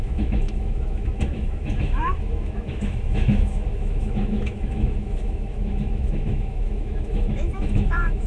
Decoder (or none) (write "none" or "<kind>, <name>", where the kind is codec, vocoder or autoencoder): autoencoder, DAC-VAE